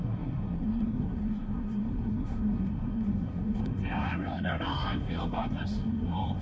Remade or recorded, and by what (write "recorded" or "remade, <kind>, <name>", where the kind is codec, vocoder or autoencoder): remade, codec, SNAC